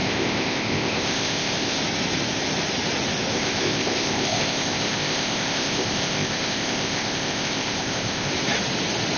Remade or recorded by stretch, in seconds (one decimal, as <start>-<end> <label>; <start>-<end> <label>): 0.0-1.8 remade; 1.8-3.3 recorded; 3.3-8.3 remade; 8.3-9.2 recorded